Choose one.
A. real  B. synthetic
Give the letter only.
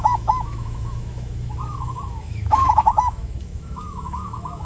B